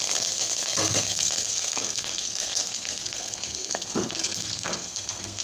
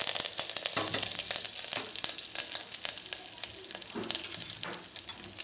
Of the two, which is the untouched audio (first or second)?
second